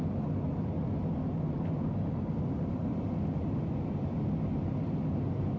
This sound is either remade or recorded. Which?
recorded